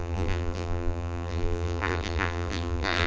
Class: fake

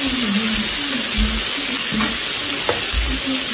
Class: real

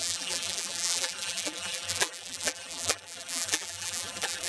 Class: fake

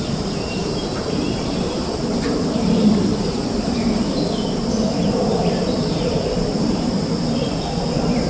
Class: fake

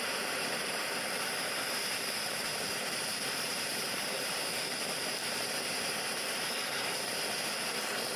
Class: fake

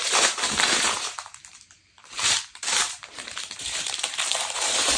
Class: fake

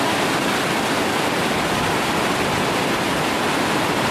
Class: real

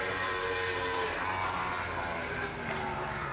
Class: fake